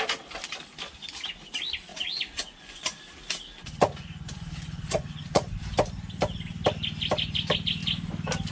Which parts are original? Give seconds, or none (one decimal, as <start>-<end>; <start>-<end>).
0.0-1.9; 3.0-3.6; 5.5-8.5